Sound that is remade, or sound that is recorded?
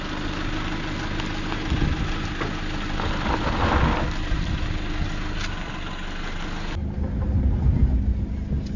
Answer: recorded